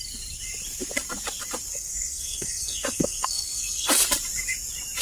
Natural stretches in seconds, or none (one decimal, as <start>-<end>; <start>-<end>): 0.0-1.7; 3.9-5.0